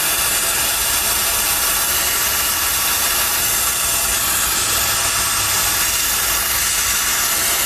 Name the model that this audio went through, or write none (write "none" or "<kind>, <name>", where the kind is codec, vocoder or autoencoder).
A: none